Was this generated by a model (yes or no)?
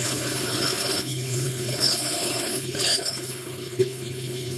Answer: yes